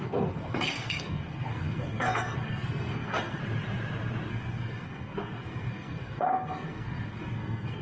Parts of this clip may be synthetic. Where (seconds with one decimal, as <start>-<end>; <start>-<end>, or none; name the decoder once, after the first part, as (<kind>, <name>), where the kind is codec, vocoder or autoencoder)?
0.0-3.4 (codec, SNAC); 4.3-7.8